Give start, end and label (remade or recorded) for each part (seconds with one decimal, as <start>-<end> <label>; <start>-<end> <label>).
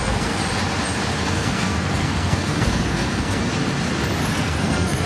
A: 0.0-0.4 remade; 0.4-1.2 recorded; 1.2-3.4 remade; 3.4-4.3 recorded; 4.3-5.1 remade